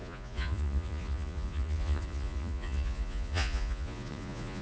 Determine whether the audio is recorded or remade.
remade